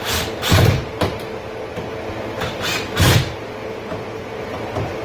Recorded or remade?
recorded